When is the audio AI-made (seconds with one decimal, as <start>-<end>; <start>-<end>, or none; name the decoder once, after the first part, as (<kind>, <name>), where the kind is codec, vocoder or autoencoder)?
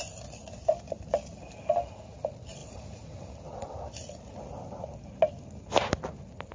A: none